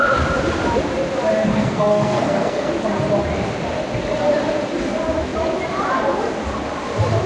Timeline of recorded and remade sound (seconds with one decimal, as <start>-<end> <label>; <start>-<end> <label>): 0.0-1.5 recorded; 1.5-2.7 remade; 2.7-7.3 recorded